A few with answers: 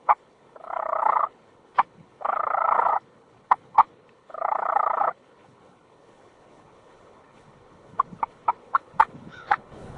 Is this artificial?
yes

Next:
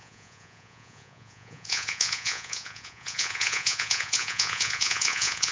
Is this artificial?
yes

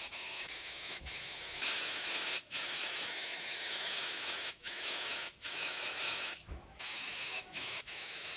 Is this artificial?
yes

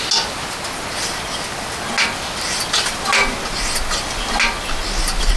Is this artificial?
no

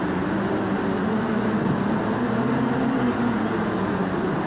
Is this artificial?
no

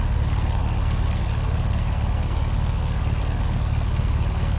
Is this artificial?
yes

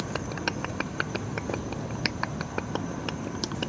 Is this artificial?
no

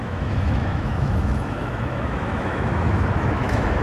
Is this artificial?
yes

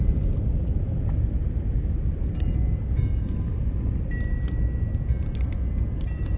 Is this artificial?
no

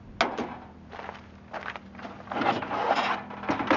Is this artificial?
no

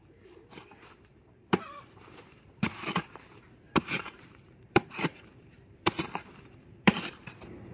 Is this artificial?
yes